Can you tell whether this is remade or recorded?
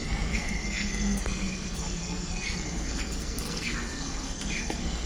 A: remade